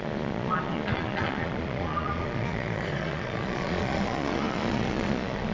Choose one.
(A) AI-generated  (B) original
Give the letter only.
A